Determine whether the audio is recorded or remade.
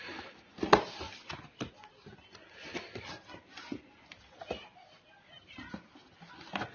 recorded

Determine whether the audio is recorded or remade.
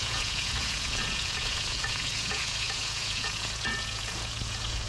remade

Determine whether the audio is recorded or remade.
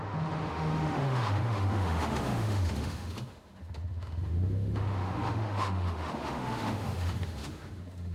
remade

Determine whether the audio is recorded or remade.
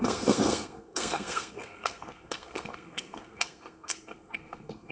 remade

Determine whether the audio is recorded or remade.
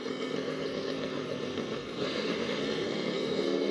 remade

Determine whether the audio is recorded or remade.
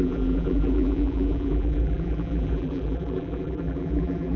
remade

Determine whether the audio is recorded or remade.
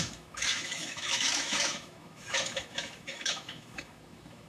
remade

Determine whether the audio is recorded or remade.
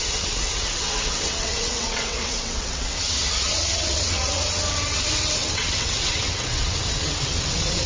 remade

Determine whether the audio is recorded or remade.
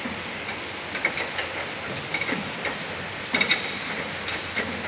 recorded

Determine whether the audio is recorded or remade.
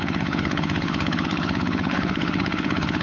remade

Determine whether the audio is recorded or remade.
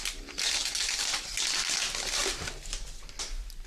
recorded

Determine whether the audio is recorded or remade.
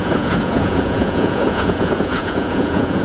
remade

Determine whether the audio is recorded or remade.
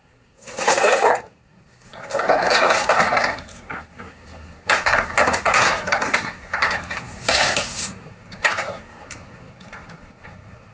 remade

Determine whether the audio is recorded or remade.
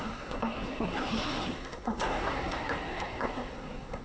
remade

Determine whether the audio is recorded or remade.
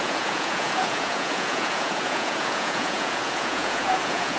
remade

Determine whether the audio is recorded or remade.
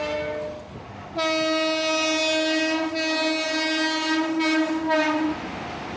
recorded